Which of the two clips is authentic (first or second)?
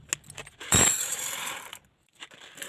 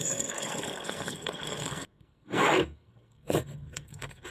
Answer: first